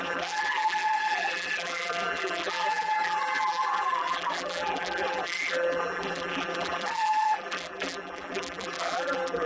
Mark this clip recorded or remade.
remade